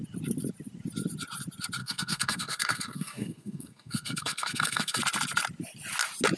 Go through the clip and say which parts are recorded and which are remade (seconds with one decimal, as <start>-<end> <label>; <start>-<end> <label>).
0.0-1.8 recorded; 1.8-5.0 remade; 5.0-6.4 recorded